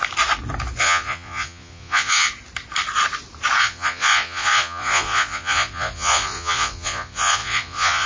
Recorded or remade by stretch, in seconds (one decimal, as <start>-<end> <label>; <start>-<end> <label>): 0.0-0.8 recorded; 0.8-2.3 remade; 2.3-3.6 recorded; 3.6-8.1 remade